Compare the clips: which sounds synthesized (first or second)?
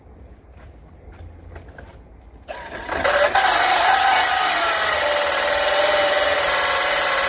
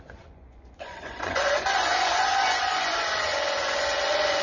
second